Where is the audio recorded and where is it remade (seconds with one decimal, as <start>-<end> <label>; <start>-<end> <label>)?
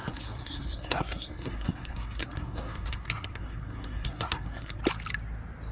0.0-4.8 remade; 4.8-5.7 recorded